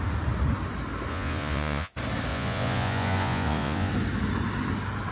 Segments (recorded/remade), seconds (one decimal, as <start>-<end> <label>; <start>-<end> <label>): 0.0-1.1 recorded; 1.1-1.9 remade; 1.9-2.3 recorded; 2.3-3.9 remade; 3.9-5.1 recorded